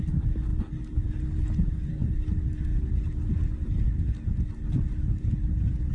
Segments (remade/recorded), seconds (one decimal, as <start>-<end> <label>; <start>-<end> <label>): 0.0-0.5 recorded; 0.5-1.1 remade; 1.1-5.9 recorded